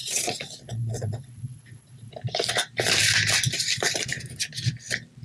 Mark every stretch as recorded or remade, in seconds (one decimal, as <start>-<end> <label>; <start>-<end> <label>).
0.0-2.1 remade; 2.1-5.2 recorded